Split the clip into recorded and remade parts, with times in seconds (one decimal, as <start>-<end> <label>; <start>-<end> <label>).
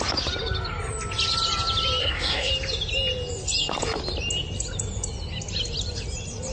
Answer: 0.0-2.0 recorded; 2.0-2.5 remade; 2.5-6.5 recorded